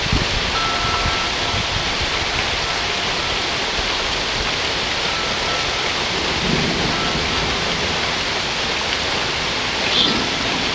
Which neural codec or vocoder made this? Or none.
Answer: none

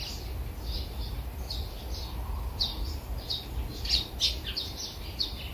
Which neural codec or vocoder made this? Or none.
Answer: none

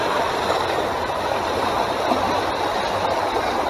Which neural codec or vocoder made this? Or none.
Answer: none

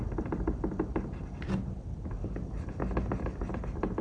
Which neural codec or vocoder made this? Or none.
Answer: none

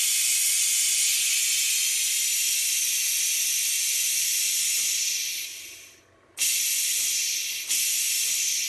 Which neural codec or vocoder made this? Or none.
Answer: none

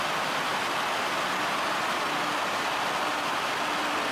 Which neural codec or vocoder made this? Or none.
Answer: none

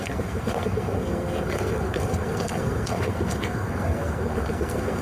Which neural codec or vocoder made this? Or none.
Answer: codec, SNAC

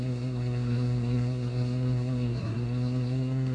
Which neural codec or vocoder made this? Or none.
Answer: codec, SNAC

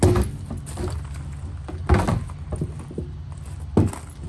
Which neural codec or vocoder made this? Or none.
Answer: none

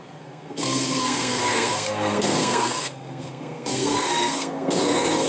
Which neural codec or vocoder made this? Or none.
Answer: codec, SNAC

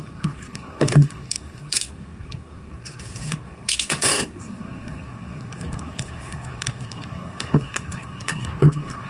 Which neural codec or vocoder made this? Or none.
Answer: codec, SNAC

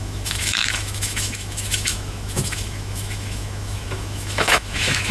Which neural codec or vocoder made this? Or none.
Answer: autoencoder, DAC-VAE